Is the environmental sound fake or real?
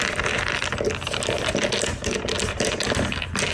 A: real